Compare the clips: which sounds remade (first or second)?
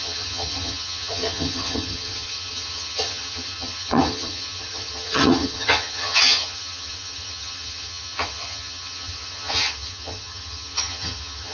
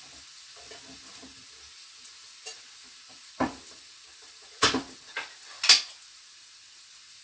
first